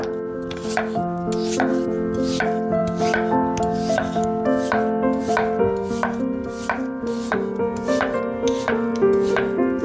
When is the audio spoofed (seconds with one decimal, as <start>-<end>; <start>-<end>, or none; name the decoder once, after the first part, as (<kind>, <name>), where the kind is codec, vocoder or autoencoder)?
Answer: none